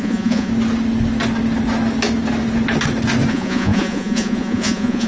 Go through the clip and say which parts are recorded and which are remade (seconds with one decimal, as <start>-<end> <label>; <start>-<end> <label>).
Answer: 0.0-0.5 remade; 0.5-3.3 recorded; 3.3-5.1 remade